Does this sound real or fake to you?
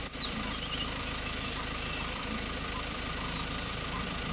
fake